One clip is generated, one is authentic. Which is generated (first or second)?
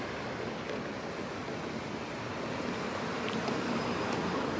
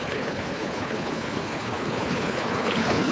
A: second